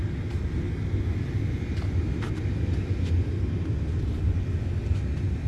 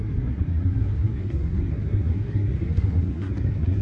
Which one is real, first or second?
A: first